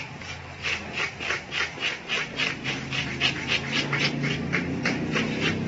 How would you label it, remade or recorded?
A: recorded